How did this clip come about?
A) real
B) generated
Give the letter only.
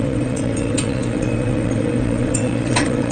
B